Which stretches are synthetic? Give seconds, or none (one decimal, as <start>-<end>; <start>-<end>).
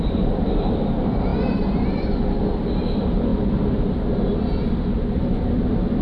0.0-3.3; 5.1-6.0